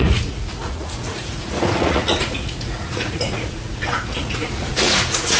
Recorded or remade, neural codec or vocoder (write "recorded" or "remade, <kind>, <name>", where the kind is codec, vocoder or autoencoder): remade, vocoder, Vocos